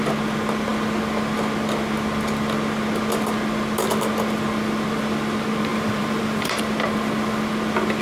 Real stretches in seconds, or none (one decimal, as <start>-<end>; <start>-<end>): 0.0-5.7; 6.6-8.0